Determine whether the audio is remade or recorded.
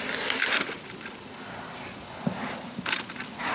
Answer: recorded